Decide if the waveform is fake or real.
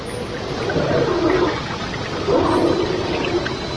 real